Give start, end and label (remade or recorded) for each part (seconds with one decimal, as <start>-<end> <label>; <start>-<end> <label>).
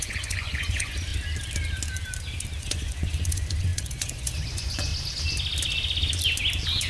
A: 0.0-1.1 remade; 1.1-2.6 recorded; 2.6-4.9 remade; 4.9-6.9 recorded